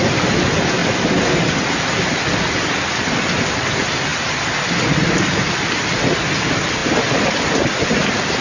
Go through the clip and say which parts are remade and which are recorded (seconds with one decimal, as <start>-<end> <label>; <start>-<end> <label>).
0.0-8.4 recorded